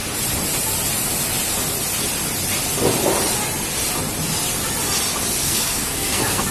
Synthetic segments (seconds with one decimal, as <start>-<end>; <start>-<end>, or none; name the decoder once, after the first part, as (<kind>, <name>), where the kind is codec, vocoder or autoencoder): 5.4-6.5 (codec, SNAC)